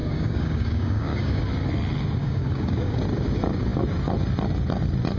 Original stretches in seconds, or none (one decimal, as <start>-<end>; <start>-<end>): 1.4-2.2; 3.0-5.2

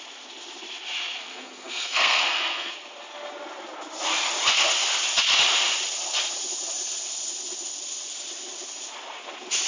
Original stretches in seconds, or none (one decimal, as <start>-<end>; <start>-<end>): 0.0-1.2; 2.7-9.7